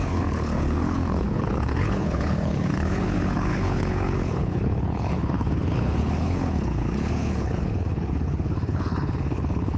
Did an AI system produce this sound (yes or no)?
yes